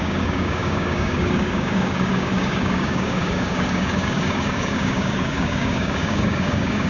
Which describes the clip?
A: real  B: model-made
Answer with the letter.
B